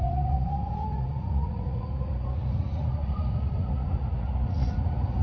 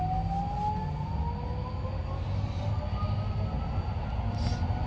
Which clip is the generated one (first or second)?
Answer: first